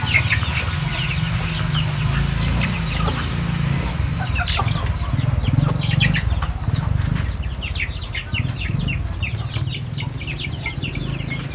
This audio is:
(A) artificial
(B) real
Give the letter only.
B